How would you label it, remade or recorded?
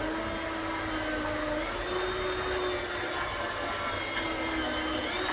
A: recorded